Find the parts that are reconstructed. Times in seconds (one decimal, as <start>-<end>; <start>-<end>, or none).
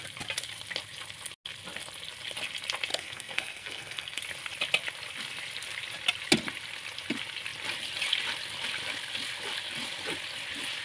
2.9-4.2